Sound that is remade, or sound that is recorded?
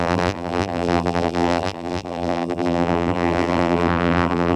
remade